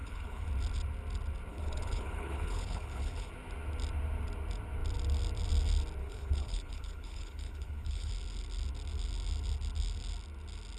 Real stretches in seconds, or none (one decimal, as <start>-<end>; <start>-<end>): 0.5-1.5; 3.3-6.0; 8.1-10.8